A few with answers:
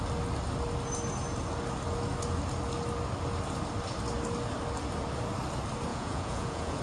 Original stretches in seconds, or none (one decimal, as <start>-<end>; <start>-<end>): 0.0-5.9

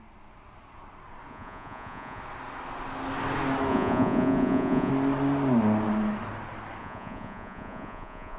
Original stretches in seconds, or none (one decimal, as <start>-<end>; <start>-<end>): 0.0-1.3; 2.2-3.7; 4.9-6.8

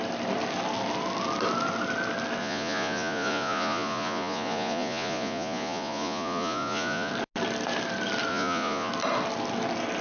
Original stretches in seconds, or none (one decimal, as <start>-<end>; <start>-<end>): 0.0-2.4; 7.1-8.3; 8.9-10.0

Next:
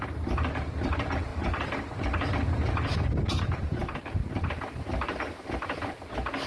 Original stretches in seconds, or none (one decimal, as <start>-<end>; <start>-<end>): 0.0-6.5

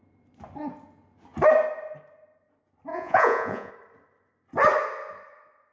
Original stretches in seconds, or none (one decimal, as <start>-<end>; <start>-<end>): 0.0-2.9; 3.7-5.7

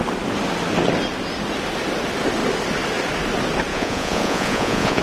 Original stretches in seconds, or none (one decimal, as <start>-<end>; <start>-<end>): 0.0-3.7